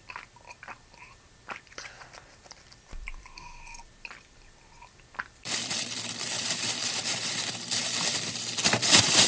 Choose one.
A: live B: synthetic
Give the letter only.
B